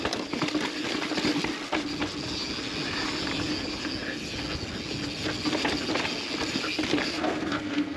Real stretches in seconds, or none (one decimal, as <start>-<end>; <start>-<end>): 0.0-7.1